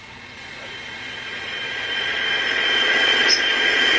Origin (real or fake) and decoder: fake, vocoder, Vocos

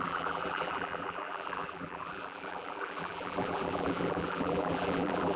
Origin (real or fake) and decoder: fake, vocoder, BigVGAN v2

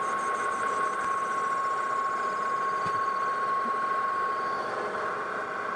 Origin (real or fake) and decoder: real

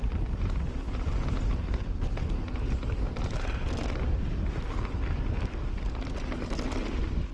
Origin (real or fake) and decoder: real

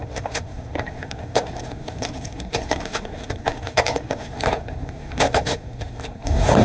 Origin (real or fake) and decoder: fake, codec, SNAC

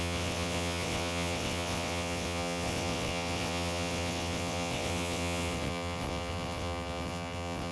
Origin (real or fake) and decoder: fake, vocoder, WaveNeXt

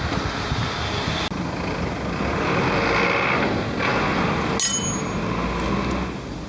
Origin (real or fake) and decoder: real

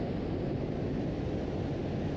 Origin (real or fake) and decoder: real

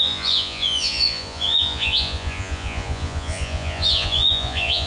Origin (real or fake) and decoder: fake, vocoder, Vocos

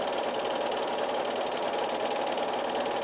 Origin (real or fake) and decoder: real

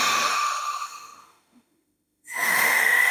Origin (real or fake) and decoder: fake, autoencoder, DAC-VAE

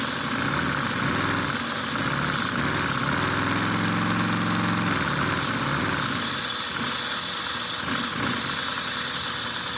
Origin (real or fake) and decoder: real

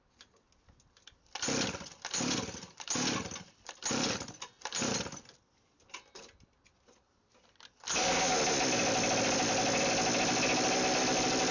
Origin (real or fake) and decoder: real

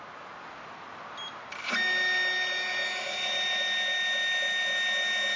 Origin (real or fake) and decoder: real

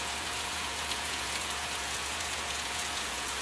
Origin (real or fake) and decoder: fake, vocoder, Vocos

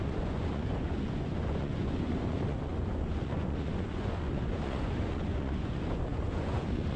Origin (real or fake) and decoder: fake, vocoder, Vocos